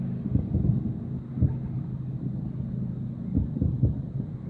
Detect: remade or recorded recorded